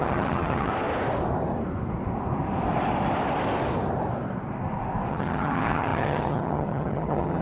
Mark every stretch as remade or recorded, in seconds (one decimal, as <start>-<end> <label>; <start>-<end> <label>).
0.0-0.7 remade; 0.7-5.1 recorded; 5.1-7.4 remade